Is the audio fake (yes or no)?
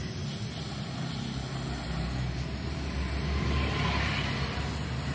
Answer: no